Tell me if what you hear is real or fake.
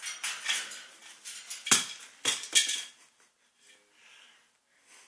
real